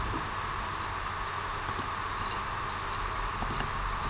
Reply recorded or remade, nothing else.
recorded